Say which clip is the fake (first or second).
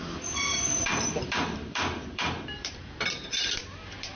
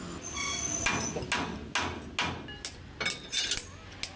first